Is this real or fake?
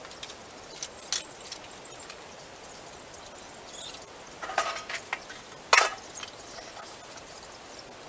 real